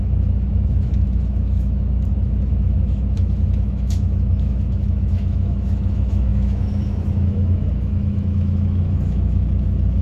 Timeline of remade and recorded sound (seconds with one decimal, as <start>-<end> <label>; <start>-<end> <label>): 0.0-10.0 remade